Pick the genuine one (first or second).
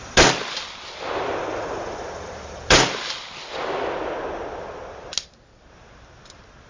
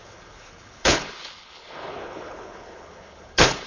first